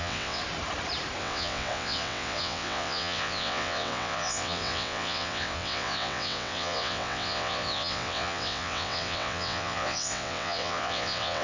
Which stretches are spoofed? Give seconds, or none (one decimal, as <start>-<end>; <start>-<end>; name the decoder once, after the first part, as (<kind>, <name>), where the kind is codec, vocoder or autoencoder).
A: 0.0-0.4 (vocoder, WaveNeXt); 1.2-11.4